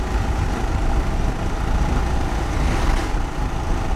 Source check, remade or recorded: recorded